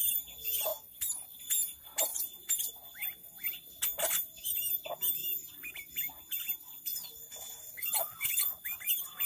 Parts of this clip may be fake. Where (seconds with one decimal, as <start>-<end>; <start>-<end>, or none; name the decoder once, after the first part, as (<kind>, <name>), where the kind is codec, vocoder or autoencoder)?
0.7-1.4 (vocoder, BigVGAN v2); 2.1-2.7; 6.9-8.6